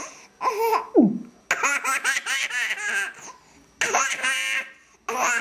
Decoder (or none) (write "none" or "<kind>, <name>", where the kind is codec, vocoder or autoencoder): none